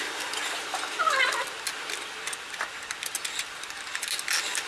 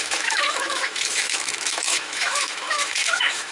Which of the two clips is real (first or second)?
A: first